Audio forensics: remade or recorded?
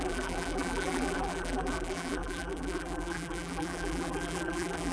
remade